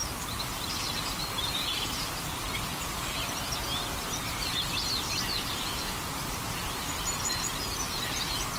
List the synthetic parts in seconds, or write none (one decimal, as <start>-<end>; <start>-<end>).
0.0-1.8; 2.4-3.0; 3.6-8.2